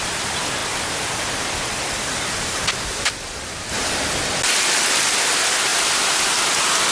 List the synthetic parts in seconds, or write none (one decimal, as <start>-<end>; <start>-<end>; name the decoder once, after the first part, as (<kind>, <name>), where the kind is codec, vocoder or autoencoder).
5.7-6.4 (vocoder, BigVGAN v2)